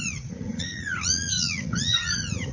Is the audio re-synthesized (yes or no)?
yes